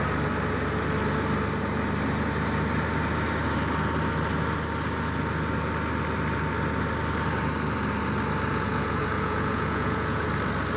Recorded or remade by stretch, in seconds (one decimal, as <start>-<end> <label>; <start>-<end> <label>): 0.0-8.5 recorded; 8.5-10.3 remade; 10.3-10.8 recorded